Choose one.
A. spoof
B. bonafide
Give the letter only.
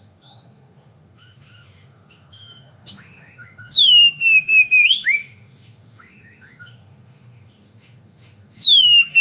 A